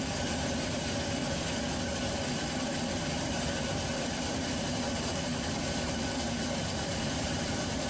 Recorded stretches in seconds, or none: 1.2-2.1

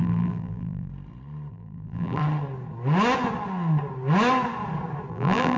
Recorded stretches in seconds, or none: 0.9-1.5; 2.2-5.1

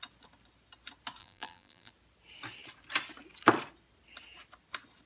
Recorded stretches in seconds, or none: 0.0-1.2; 1.9-5.1

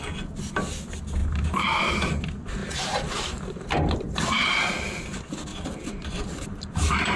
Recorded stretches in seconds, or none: 0.0-1.2; 2.1-2.6; 5.0-5.5

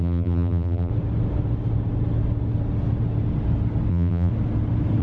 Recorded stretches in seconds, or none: 0.9-3.9; 4.3-5.0

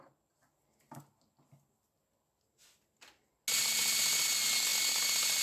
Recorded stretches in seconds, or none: 0.0-3.6; 4.2-4.7

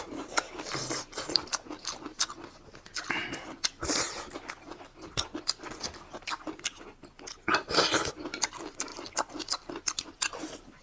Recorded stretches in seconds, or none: 0.0-3.2; 5.8-8.9